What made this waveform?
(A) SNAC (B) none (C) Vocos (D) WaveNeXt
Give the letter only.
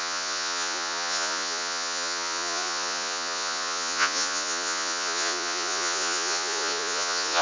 C